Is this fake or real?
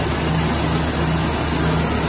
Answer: real